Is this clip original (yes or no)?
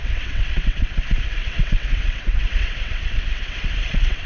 no